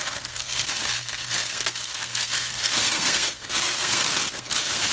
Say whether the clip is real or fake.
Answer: fake